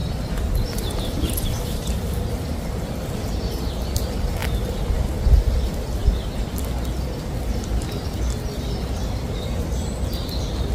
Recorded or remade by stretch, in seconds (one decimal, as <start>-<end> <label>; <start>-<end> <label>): 0.0-2.9 remade; 2.9-4.4 recorded; 4.4-5.2 remade; 5.2-10.7 recorded